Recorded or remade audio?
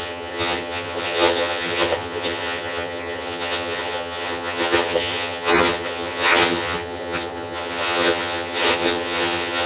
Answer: remade